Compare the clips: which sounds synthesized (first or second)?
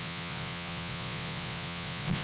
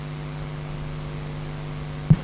first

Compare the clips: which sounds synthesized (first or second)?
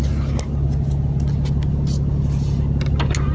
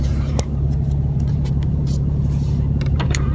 second